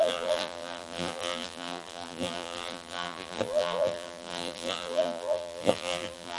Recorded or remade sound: remade